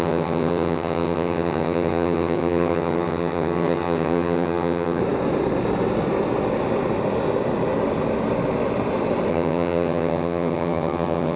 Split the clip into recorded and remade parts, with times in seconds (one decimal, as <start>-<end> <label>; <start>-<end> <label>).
0.0-5.0 remade; 5.0-9.3 recorded; 9.3-11.4 remade